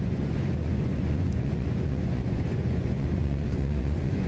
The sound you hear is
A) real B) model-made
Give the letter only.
B